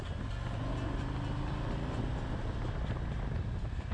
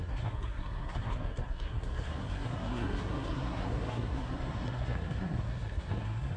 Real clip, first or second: first